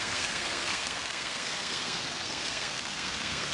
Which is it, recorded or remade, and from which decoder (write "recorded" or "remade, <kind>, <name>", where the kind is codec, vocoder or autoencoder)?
remade, codec, SNAC